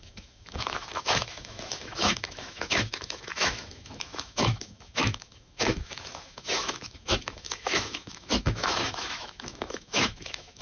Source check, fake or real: fake